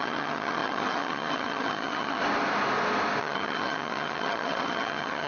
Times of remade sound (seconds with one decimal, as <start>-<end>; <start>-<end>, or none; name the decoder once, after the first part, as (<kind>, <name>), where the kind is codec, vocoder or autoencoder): 0.0-2.2 (vocoder, HiFi-GAN); 3.2-5.3